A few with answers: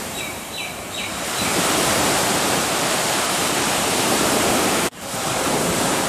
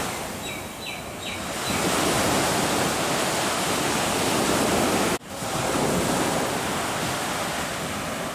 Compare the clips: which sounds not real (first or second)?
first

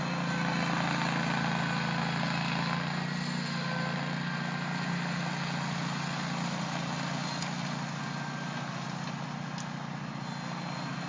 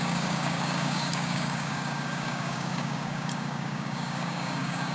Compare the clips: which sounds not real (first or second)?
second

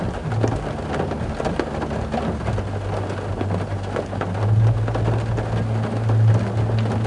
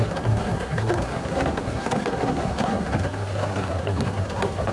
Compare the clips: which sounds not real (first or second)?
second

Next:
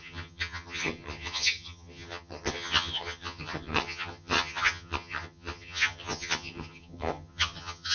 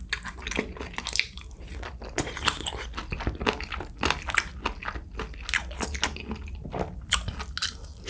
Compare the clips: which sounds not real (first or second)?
first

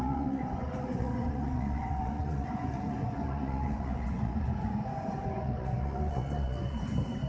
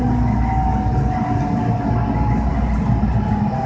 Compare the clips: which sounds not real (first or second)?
first